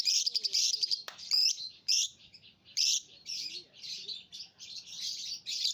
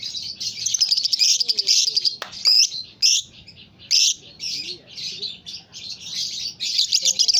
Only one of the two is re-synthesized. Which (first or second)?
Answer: first